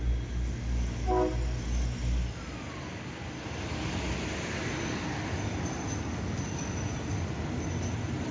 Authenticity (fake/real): real